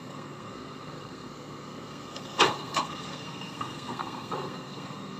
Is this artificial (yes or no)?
yes